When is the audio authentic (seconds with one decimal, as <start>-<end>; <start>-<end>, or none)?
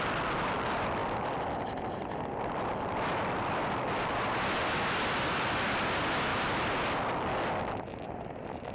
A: 0.0-8.7